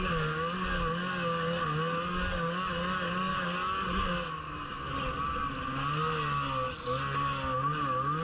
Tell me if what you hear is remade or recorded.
recorded